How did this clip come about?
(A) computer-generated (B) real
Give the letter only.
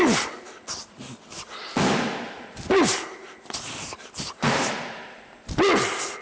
B